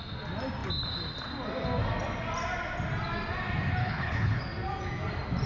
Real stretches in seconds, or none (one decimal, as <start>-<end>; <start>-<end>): 0.0-3.8; 4.4-5.5